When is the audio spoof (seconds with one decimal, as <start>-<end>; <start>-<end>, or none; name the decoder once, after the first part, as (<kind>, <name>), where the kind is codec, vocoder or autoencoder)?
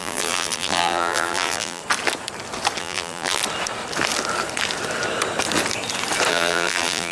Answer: 0.0-1.8 (vocoder, BigVGAN v2); 2.8-3.4; 6.3-7.1